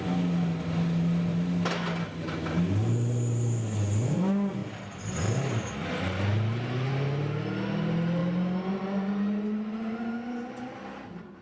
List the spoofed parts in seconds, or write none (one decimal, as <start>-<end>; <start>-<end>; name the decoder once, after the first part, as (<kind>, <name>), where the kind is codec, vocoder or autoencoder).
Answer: none

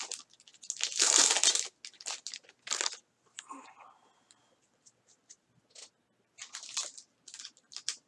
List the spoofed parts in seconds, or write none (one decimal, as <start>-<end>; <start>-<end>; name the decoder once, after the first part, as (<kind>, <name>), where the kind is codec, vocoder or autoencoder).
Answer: none